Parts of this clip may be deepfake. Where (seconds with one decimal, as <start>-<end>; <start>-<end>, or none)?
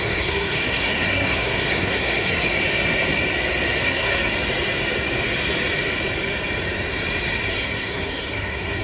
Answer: 0.0-2.5; 3.8-4.3; 7.5-8.8